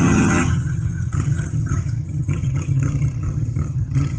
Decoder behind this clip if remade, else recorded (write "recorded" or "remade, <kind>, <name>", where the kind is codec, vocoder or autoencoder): remade, vocoder, HiFi-GAN